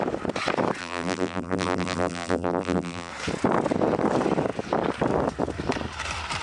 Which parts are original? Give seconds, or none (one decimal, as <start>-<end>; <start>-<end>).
0.0-0.8; 3.1-6.4